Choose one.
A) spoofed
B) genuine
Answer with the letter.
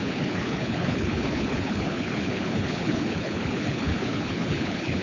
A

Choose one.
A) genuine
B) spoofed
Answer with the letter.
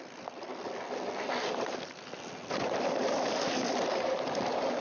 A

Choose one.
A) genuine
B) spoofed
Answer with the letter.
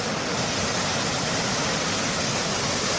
A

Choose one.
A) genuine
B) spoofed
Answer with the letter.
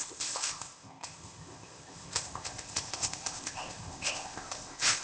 B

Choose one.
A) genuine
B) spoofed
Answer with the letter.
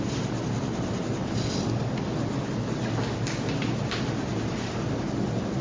A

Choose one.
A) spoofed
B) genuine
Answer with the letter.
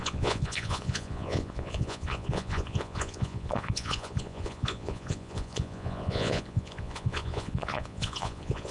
A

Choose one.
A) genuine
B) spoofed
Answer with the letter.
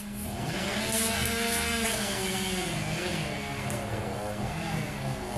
B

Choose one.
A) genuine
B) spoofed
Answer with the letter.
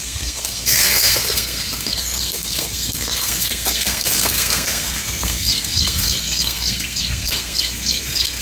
B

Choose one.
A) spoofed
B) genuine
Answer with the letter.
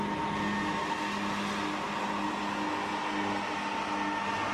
B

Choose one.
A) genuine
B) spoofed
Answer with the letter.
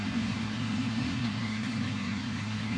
B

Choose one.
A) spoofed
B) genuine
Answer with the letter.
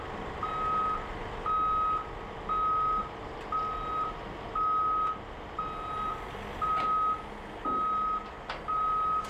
B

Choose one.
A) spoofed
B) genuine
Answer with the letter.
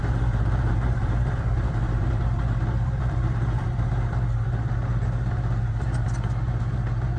A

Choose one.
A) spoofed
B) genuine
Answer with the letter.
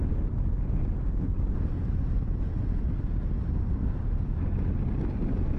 B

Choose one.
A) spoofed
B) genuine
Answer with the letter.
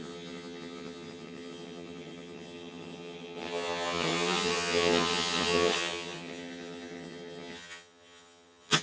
A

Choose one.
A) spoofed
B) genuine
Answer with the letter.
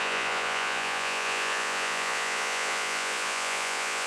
A